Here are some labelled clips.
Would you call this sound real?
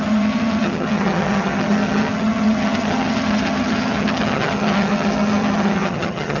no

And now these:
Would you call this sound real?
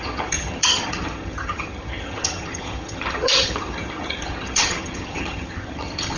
no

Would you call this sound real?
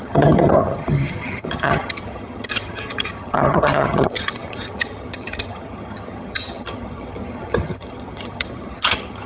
no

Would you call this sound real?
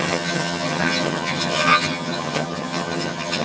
no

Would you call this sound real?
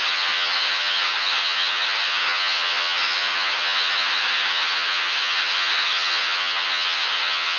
no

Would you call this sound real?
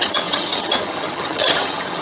no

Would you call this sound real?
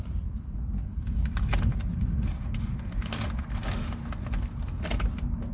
yes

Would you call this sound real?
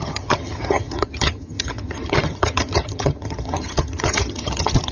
no